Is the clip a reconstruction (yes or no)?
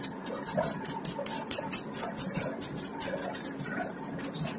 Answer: no